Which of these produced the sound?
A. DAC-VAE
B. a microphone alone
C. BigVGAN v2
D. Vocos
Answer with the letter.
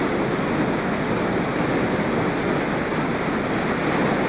B